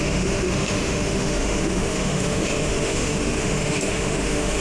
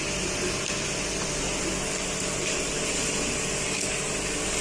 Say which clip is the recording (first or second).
second